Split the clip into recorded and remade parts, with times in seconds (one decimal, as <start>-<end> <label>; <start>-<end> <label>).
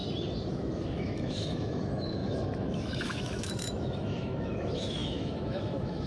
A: 0.0-0.5 recorded; 0.5-6.1 remade